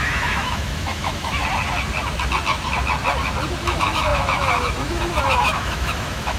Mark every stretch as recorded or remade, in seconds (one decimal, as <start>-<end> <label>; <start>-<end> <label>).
0.0-1.4 remade; 1.4-3.6 recorded; 3.6-6.4 remade